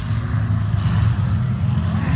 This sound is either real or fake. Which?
real